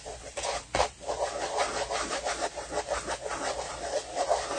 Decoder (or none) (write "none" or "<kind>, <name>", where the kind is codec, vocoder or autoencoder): none